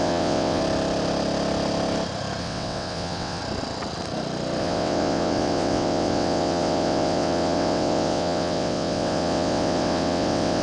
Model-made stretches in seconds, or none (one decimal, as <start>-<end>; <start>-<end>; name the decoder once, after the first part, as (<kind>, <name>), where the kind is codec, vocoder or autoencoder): 0.0-0.6 (vocoder, WaveNeXt); 2.4-3.4; 4.6-10.6